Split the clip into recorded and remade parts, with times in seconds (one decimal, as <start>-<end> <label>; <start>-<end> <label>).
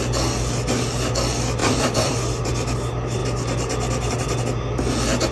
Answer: 0.0-1.6 recorded; 1.6-2.5 remade; 2.5-5.3 recorded